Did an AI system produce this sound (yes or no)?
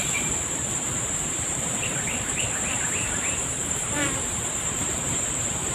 yes